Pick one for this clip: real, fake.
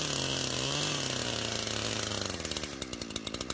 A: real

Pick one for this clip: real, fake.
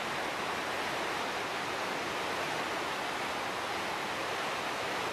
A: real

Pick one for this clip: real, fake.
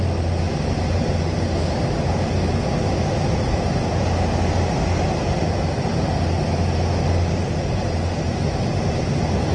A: real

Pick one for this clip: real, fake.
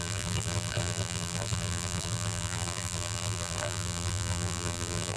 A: fake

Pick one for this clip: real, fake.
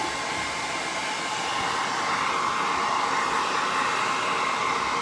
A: real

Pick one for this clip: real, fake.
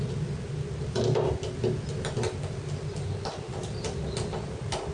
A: real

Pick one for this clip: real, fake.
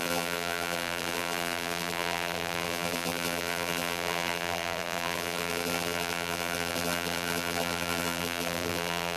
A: fake